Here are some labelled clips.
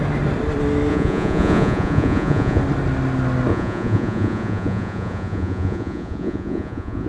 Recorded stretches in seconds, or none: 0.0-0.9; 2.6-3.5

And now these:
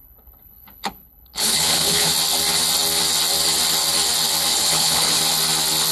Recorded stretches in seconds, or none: 2.1-4.5; 5.2-5.9

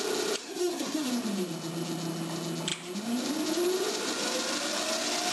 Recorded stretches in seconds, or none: 0.0-0.4; 1.1-5.3

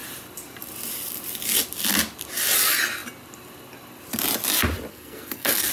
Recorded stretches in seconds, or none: 0.0-4.9

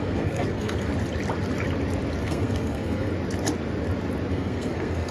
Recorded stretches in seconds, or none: 0.9-2.2; 3.1-4.3